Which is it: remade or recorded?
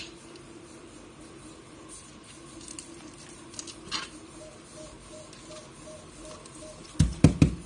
recorded